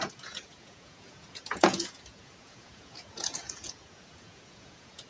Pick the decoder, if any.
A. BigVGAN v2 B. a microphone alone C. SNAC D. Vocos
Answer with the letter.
D